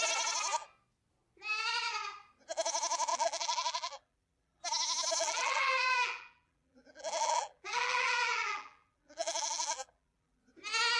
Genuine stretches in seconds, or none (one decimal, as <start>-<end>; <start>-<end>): 0.0-3.1; 4.6-5.2; 10.4-11.0